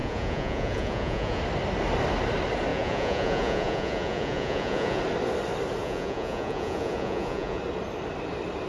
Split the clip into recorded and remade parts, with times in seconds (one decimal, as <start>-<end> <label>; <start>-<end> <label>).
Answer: 0.0-1.4 remade; 1.4-2.7 recorded; 2.7-5.0 remade; 5.0-5.8 recorded; 5.8-7.6 remade; 7.6-8.7 recorded